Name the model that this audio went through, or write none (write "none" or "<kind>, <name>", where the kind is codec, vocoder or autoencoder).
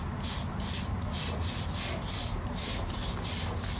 none